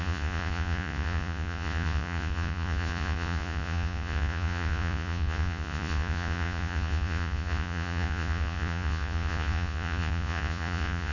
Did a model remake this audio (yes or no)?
yes